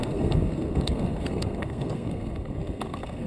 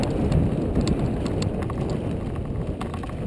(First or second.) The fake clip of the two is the first